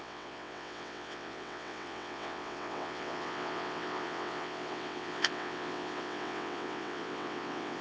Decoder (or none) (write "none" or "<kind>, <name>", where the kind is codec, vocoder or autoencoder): vocoder, WaveNeXt